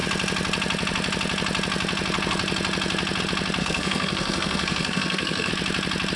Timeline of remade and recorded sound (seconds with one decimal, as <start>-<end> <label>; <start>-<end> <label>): 0.0-3.6 recorded; 3.6-5.5 remade; 5.5-6.2 recorded